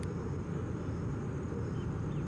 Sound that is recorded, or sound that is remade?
recorded